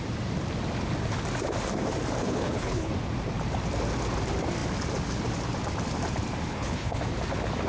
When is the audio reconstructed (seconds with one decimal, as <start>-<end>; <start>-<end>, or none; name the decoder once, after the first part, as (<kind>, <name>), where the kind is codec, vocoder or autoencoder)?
2.2-2.9 (codec, HILCodec); 6.5-7.0